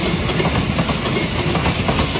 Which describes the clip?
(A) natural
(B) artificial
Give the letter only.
A